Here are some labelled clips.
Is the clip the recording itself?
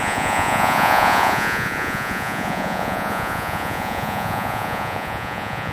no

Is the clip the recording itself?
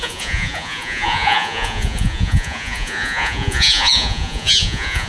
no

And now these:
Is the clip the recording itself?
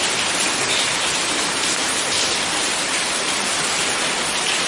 yes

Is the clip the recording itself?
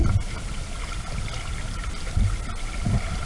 yes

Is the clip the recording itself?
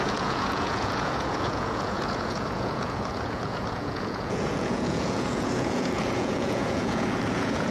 no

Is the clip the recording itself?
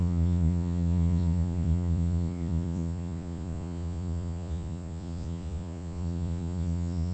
no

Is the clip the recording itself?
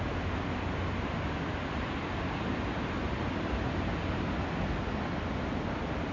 yes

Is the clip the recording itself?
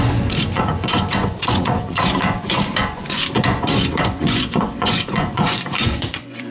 no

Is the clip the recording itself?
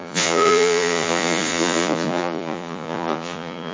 no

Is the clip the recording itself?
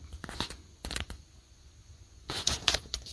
no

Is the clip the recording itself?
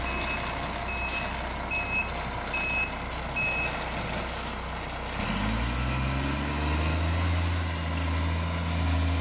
yes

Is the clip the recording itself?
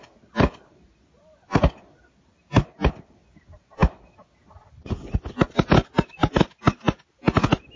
yes